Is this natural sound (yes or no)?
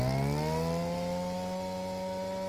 yes